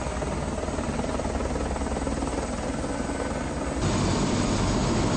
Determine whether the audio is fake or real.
real